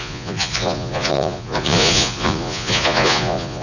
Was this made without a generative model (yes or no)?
no